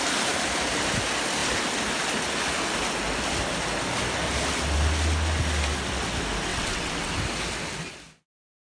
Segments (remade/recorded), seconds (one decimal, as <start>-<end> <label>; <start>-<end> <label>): 0.0-6.5 recorded; 6.5-7.1 remade; 7.1-8.8 recorded